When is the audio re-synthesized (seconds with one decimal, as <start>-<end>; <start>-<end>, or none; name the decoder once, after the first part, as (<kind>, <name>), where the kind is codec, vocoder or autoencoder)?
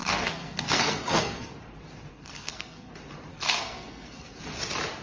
0.0-1.5 (codec, SNAC); 2.1-2.9; 3.3-4.4